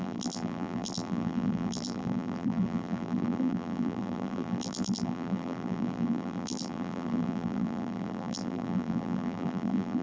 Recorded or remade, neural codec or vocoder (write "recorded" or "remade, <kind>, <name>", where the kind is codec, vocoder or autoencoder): remade, vocoder, BigVGAN v2